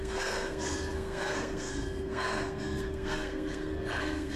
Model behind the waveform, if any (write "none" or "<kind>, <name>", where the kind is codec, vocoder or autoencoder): codec, SNAC